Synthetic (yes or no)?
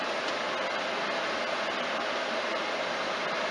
no